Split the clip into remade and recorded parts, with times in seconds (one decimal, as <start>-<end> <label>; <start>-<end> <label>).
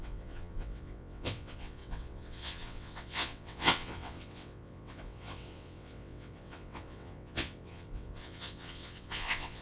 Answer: 0.0-9.6 remade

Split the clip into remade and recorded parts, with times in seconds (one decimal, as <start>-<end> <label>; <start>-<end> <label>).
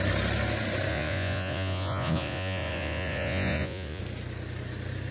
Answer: 0.0-0.9 recorded; 0.9-4.0 remade; 4.0-5.1 recorded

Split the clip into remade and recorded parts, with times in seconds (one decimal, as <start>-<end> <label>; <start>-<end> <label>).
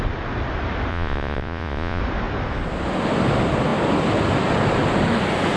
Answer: 0.0-0.9 recorded; 0.9-2.0 remade; 2.0-5.6 recorded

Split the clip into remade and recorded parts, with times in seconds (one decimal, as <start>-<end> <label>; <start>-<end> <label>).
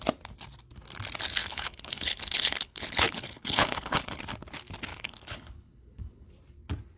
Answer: 0.0-1.4 recorded; 1.4-4.2 remade; 4.2-4.9 recorded; 4.9-6.3 remade; 6.3-7.0 recorded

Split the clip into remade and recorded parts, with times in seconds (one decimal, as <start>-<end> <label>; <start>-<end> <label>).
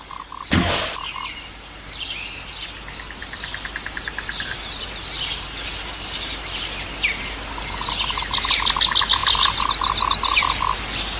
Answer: 0.0-11.2 recorded